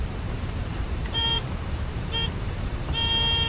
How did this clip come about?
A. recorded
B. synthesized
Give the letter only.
B